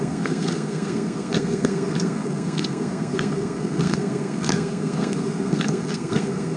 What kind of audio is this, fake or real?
fake